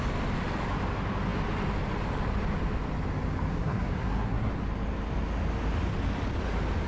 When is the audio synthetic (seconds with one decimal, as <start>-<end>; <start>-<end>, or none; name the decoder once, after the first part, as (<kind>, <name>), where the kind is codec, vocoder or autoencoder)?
3.5-4.5 (codec, SNAC)